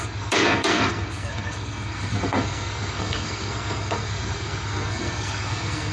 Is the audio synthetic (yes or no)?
yes